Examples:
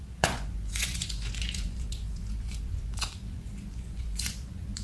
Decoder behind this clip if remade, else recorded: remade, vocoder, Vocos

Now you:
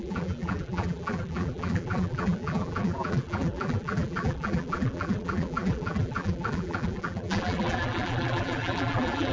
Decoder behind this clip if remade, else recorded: remade, vocoder, BigVGAN v2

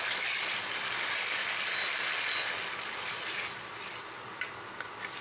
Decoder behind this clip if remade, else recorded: recorded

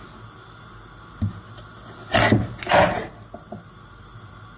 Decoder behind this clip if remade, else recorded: recorded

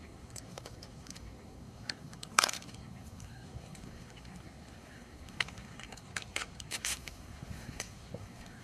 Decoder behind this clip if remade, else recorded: remade, codec, SNAC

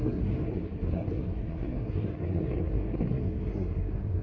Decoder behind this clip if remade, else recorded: remade, codec, SNAC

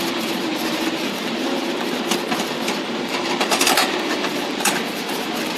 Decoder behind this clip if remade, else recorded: remade, vocoder, BigVGAN v2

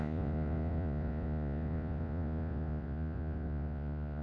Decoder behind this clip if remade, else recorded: remade, vocoder, Vocos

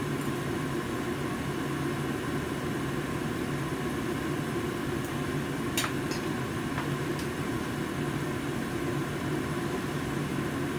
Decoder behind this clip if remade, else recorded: recorded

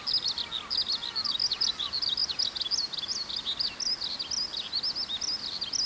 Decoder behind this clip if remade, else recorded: recorded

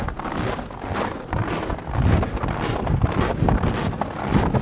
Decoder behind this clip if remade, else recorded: recorded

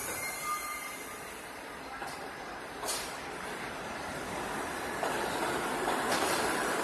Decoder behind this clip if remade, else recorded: remade, vocoder, BigVGAN v2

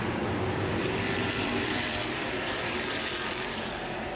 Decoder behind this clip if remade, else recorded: remade, vocoder, BigVGAN v2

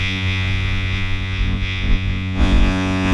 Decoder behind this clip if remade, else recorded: remade, vocoder, Vocos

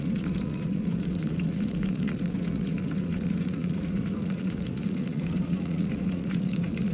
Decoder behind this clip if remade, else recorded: remade, vocoder, Vocos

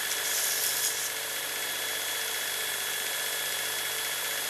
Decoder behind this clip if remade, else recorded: recorded